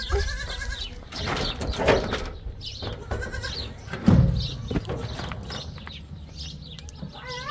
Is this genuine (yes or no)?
yes